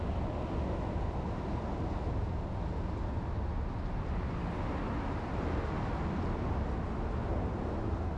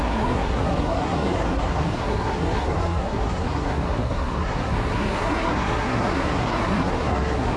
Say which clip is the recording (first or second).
first